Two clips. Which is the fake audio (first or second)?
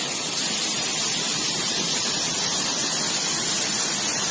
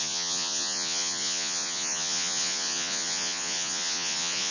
second